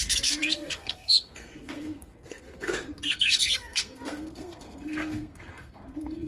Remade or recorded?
remade